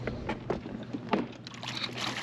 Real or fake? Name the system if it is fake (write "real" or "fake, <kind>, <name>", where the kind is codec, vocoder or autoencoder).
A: real